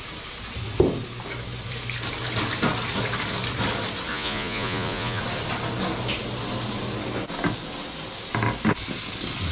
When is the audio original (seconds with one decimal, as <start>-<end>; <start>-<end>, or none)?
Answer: 0.0-4.1; 5.2-9.5